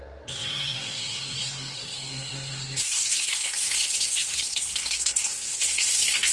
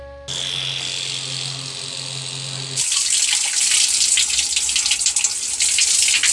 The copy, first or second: first